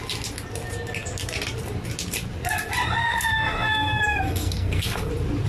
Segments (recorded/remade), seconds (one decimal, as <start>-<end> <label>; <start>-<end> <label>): 0.0-3.0 recorded; 3.0-5.1 remade; 5.1-5.5 recorded